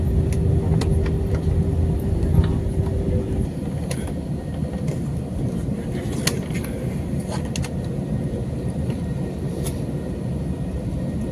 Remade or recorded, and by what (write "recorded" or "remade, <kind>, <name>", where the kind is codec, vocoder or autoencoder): recorded